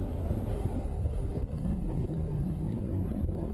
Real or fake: fake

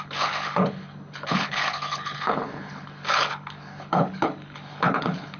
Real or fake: fake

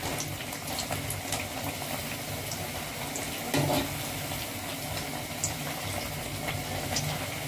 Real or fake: real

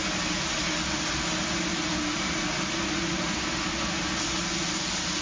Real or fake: real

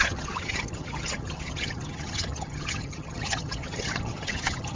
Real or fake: fake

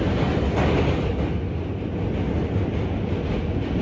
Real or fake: real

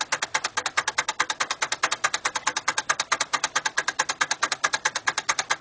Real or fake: real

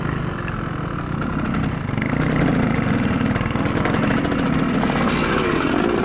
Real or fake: real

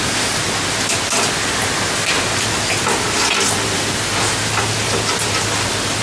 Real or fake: real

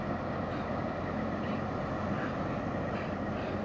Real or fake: real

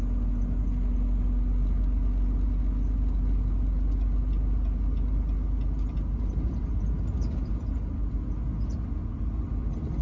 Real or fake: real